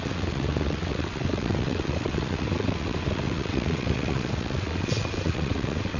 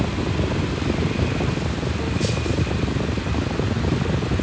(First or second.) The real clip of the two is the second